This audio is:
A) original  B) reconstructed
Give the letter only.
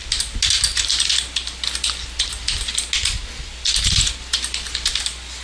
A